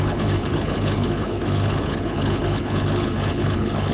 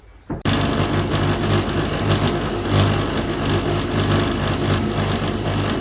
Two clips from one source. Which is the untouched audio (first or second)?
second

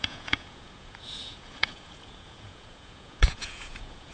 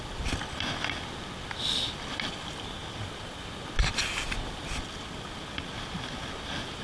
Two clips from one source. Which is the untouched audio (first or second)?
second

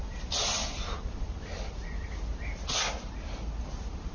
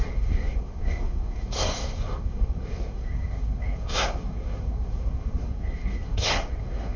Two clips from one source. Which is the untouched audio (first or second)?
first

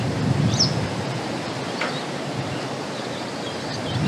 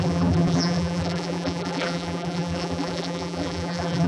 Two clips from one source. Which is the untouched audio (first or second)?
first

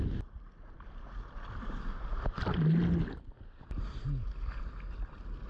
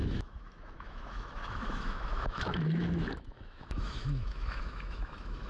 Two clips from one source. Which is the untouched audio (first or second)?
first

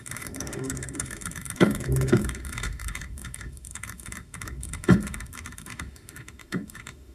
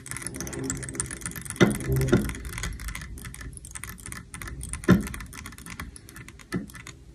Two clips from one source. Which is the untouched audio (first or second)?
second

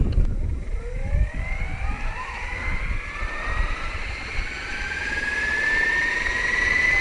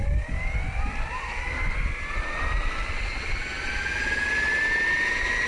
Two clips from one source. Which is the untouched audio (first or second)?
second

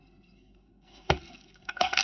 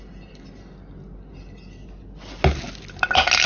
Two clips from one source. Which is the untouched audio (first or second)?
second